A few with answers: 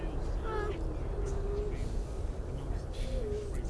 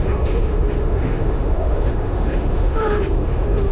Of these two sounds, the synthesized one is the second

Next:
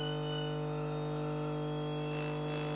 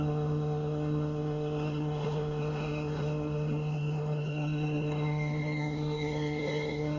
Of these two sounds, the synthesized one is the second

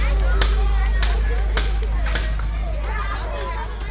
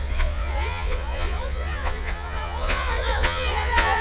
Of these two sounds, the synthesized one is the second